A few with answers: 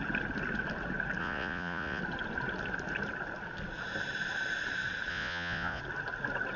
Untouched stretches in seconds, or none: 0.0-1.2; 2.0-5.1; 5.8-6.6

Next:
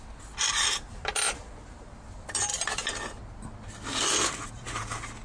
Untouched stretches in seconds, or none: 0.0-5.2

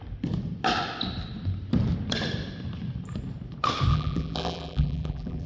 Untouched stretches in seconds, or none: 0.0-3.9

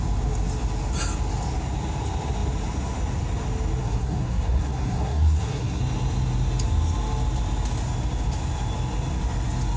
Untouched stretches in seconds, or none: 0.0-3.8; 5.8-9.8